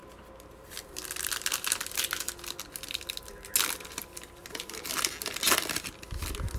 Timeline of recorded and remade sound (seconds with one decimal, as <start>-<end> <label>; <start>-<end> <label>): 0.0-6.6 recorded